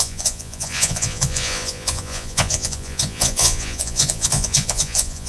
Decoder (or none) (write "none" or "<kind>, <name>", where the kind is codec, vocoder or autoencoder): vocoder, Vocos